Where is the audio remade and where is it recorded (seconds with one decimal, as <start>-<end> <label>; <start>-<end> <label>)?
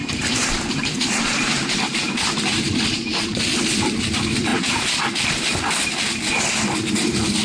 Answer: 0.0-1.7 remade; 1.7-4.5 recorded; 4.5-5.9 remade; 5.9-7.4 recorded